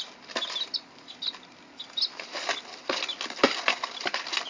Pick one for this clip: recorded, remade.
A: recorded